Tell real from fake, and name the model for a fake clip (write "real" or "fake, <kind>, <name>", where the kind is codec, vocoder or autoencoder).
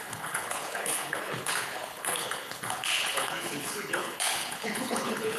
fake, codec, HILCodec